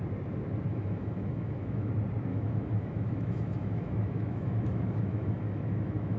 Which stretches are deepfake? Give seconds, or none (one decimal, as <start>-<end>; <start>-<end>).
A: 0.7-1.9; 2.3-6.2